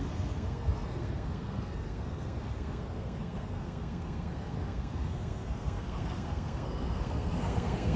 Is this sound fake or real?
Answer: fake